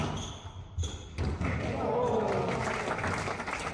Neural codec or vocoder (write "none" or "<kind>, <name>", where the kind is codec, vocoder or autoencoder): none